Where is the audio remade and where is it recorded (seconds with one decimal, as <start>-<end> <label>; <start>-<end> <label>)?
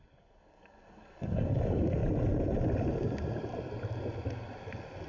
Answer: 0.0-2.0 remade; 2.0-5.1 recorded